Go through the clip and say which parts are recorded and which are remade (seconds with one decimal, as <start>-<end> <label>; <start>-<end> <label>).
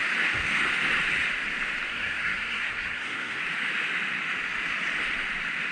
0.0-1.9 recorded; 1.9-3.4 remade; 3.4-5.7 recorded